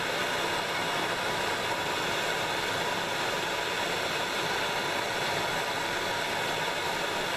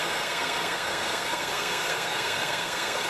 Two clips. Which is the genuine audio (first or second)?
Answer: first